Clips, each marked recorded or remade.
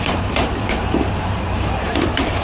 remade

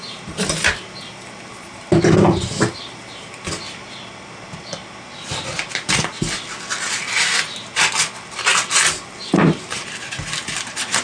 recorded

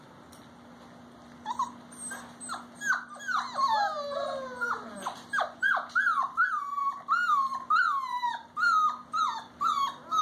recorded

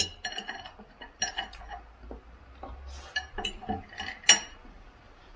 recorded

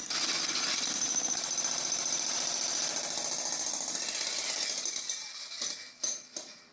remade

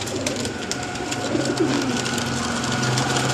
recorded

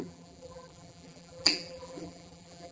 remade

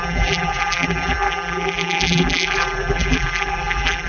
remade